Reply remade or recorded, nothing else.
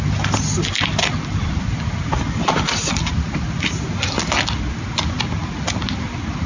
recorded